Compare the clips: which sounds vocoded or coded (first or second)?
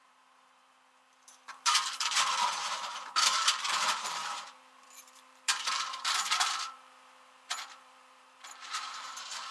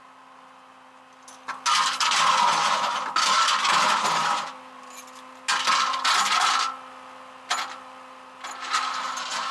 first